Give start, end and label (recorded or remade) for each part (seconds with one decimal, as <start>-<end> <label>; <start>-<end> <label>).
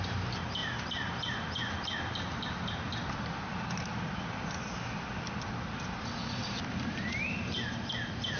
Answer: 0.0-8.4 recorded